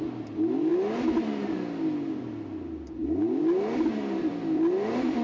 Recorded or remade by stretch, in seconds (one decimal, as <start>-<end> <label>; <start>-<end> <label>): 0.0-5.2 recorded

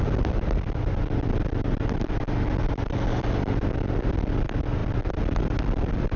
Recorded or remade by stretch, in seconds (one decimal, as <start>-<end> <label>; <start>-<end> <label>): 0.0-6.2 recorded

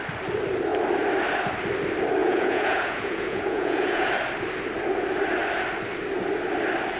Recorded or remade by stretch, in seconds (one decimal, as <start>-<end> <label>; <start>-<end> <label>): 0.0-2.2 recorded; 2.2-4.1 remade; 4.1-7.0 recorded

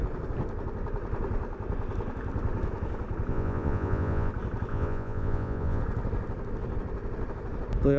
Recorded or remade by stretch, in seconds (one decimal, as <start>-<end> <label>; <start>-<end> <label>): 0.0-3.3 recorded; 3.3-4.3 remade; 4.3-4.7 recorded; 4.7-5.8 remade; 5.8-8.0 recorded

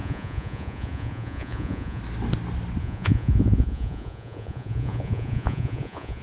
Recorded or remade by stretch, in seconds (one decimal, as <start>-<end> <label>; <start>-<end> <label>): 0.0-2.0 remade; 2.0-2.8 recorded; 2.8-6.2 remade

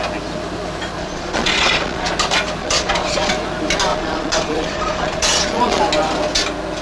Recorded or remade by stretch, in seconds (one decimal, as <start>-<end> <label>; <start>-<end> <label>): 0.0-1.0 recorded; 1.0-2.1 remade; 2.1-2.6 recorded; 2.6-3.3 remade; 3.3-3.9 recorded; 3.9-5.8 remade; 5.8-6.8 recorded